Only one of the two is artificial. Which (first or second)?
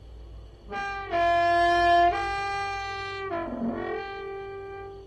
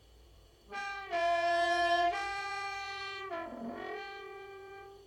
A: second